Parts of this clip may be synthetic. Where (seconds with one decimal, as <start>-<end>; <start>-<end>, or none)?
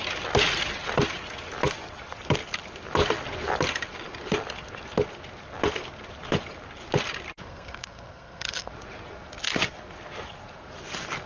7.4-8.7